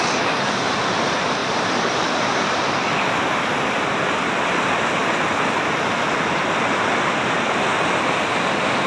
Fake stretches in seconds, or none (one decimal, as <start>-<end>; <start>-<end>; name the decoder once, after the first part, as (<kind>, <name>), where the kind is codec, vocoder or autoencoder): none